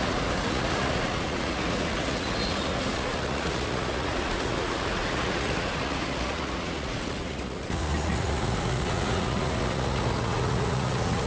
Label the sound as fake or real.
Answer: fake